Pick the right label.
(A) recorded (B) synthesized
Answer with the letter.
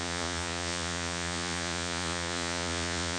B